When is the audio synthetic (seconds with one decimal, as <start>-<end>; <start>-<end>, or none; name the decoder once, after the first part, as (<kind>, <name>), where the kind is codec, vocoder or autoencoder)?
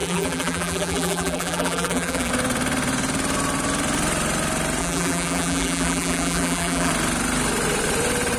0.0-2.3 (vocoder, BigVGAN v2); 4.8-6.9